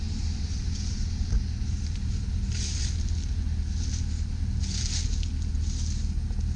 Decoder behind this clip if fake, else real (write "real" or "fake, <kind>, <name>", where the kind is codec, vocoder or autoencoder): real